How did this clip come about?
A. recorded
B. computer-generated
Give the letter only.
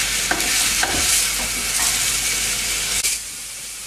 A